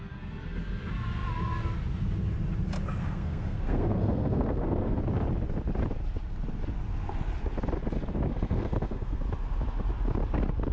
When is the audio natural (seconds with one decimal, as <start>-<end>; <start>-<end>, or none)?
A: 0.0-3.0; 5.0-8.3; 9.2-10.7